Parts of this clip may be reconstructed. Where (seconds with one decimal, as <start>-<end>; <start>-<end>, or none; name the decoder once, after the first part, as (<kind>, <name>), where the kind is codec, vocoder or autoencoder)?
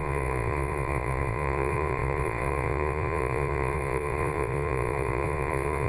0.0-5.9 (vocoder, Vocos)